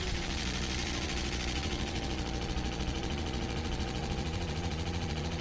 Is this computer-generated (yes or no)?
yes